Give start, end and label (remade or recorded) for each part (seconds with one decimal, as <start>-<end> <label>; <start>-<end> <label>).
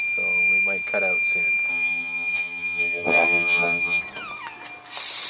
0.0-1.7 recorded; 1.7-4.0 remade; 4.0-5.3 recorded